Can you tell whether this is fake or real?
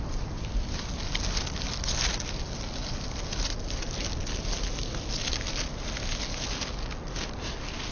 real